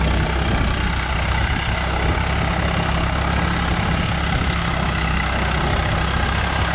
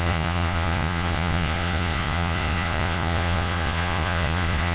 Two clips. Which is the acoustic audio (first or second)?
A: first